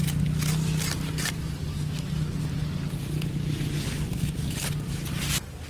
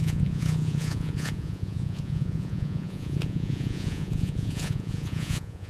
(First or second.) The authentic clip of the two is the first